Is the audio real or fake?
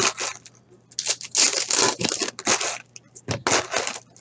real